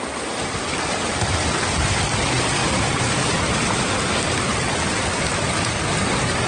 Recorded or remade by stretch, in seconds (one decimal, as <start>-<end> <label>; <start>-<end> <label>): 0.0-6.5 recorded